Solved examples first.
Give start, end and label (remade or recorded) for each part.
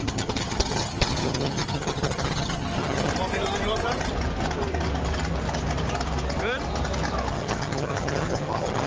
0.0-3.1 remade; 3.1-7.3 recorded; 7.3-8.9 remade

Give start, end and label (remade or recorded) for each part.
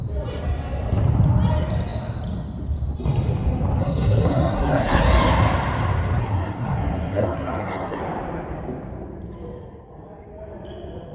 0.0-3.8 recorded; 3.8-5.0 remade; 5.0-6.2 recorded; 6.2-8.0 remade; 8.0-11.1 recorded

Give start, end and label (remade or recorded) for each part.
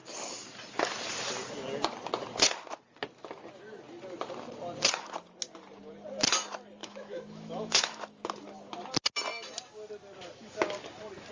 0.0-6.8 recorded; 6.8-8.0 remade; 8.0-11.3 recorded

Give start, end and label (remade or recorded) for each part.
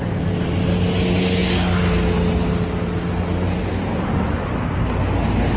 0.0-5.6 recorded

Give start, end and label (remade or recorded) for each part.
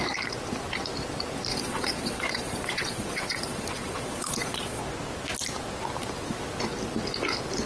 0.0-1.5 recorded; 1.5-4.8 remade; 4.8-7.7 recorded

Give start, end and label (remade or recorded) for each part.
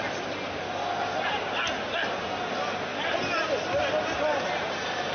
0.0-2.9 recorded; 2.9-3.9 remade; 3.9-5.1 recorded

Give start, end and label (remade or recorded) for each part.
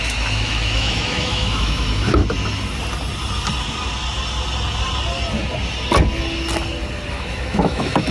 0.0-2.2 remade; 2.2-7.1 recorded; 7.1-8.1 remade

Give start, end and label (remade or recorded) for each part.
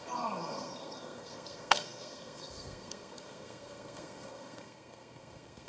0.0-5.7 remade